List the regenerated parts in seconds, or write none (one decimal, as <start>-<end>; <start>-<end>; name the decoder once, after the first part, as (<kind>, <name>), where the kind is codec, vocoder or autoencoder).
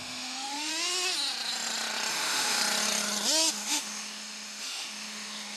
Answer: 0.0-0.7 (autoencoder, DAC-VAE); 2.1-2.6; 3.5-5.6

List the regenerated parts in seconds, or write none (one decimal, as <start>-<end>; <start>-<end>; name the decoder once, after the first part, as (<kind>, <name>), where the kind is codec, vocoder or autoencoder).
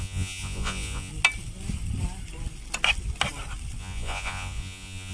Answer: 0.0-1.1 (vocoder, Vocos); 3.8-5.1